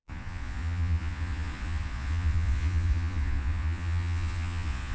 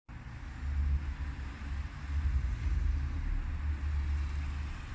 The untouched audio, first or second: second